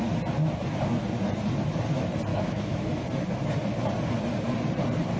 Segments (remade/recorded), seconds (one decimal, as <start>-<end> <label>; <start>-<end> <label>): 0.0-2.3 recorded; 2.3-2.9 remade; 2.9-5.2 recorded